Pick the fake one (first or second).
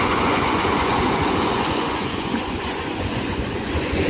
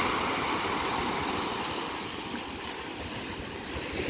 first